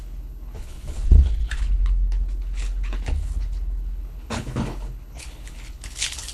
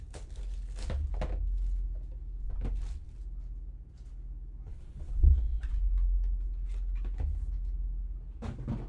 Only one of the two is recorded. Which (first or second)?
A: second